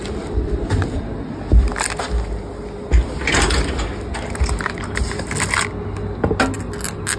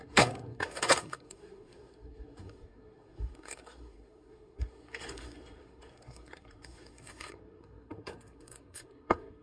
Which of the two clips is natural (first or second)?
first